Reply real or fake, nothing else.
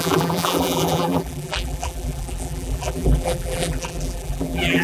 fake